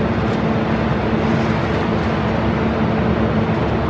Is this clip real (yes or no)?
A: yes